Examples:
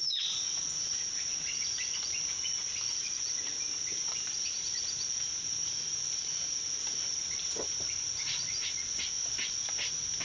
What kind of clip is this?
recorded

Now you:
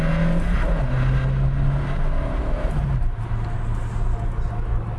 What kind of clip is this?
recorded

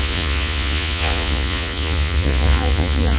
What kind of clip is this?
remade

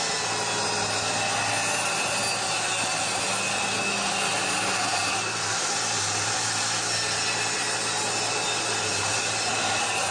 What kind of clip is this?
recorded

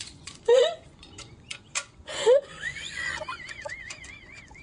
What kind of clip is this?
remade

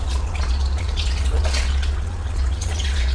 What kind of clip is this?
remade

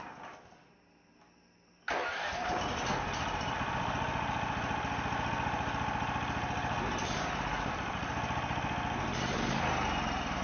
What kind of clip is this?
recorded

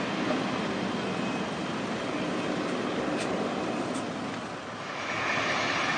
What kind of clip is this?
recorded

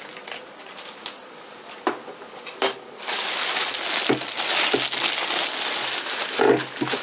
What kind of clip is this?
recorded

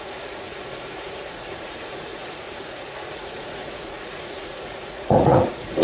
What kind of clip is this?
remade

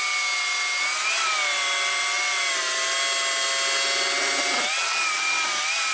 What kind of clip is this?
recorded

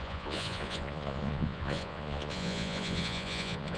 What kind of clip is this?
remade